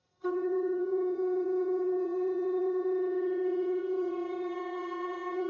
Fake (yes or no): yes